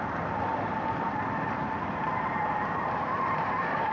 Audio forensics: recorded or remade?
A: recorded